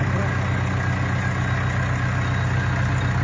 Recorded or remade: recorded